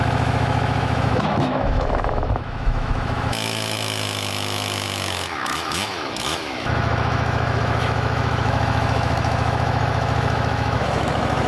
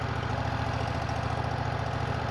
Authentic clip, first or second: second